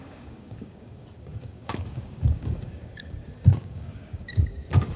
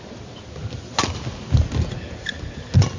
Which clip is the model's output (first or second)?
first